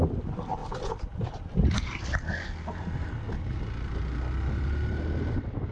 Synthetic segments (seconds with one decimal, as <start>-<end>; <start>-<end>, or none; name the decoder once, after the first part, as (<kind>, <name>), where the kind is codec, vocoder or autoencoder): none